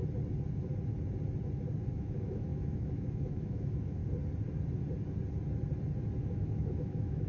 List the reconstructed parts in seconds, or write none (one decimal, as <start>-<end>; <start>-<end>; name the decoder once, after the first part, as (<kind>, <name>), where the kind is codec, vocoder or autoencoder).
1.9-4.0 (autoencoder, DAC-VAE); 6.3-7.3